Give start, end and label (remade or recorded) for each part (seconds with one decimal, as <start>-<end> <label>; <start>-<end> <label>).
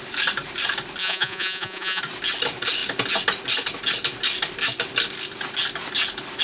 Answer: 0.0-1.0 recorded; 1.0-2.0 remade; 2.0-6.4 recorded